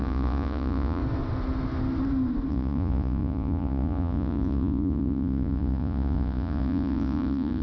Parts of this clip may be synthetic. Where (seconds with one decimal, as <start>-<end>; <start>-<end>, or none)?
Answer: 0.0-1.0; 2.5-7.6